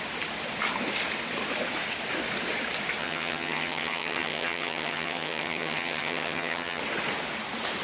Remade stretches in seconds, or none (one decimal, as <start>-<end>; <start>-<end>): 3.0-6.8